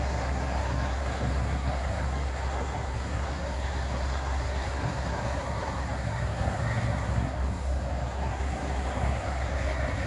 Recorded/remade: remade